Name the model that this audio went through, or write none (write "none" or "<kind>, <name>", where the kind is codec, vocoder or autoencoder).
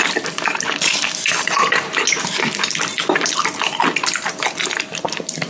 none